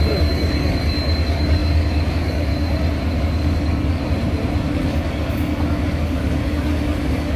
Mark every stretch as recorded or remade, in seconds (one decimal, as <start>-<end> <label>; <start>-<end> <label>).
0.0-2.5 remade; 2.5-3.2 recorded; 3.2-4.0 remade; 4.0-4.7 recorded; 4.7-7.4 remade